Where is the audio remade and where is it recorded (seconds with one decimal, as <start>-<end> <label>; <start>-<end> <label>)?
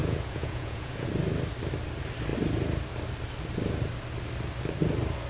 0.0-1.1 remade; 1.1-5.3 recorded